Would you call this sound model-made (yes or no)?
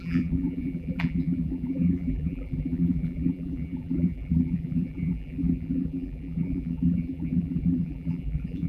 yes